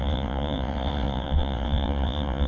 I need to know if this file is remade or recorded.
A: remade